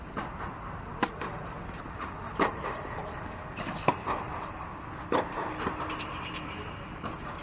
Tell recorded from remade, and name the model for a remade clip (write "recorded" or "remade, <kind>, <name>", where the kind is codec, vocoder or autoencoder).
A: remade, vocoder, BigVGAN v2